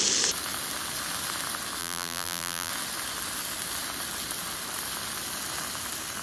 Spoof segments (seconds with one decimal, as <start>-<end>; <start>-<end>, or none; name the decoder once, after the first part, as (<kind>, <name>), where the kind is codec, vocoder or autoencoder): 1.8-2.7 (vocoder, BigVGAN v2)